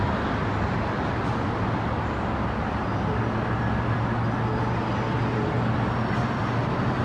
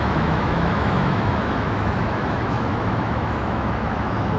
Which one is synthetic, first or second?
second